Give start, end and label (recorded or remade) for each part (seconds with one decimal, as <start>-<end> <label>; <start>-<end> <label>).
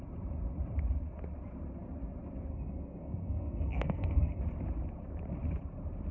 0.0-2.5 recorded; 2.5-4.4 remade; 4.4-6.1 recorded